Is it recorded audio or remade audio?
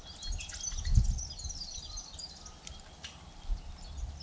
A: recorded